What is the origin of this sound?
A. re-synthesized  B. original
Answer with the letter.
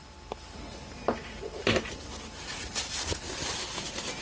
B